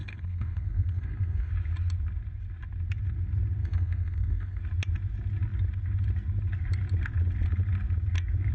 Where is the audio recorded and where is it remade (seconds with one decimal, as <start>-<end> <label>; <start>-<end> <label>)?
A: 0.0-1.5 remade; 1.5-3.6 recorded; 3.6-4.6 remade; 4.6-8.5 recorded